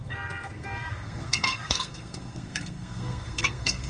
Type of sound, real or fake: fake